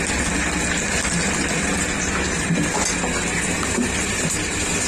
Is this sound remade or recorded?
recorded